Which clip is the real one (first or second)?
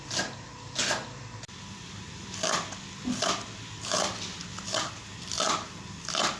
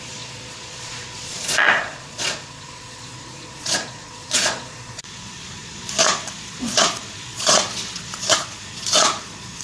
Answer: first